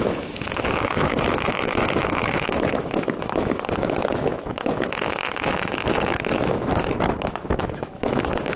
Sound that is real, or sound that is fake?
fake